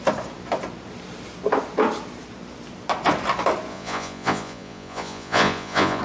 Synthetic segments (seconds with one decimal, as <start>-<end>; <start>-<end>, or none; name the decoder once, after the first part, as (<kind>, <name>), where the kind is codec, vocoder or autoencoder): 3.7-6.0 (vocoder, Vocos)